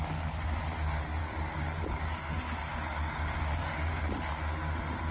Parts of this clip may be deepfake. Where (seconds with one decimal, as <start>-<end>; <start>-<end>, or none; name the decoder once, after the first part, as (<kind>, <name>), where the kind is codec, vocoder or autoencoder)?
1.2-4.3 (codec, DAC)